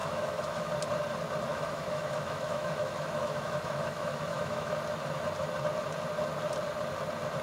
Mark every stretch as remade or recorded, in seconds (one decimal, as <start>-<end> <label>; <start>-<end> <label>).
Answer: 0.0-0.7 remade; 0.7-1.5 recorded; 1.5-4.7 remade; 4.7-7.4 recorded